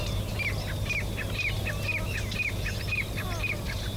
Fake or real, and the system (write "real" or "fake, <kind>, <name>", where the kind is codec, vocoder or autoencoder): real